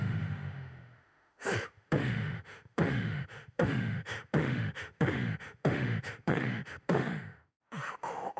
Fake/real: fake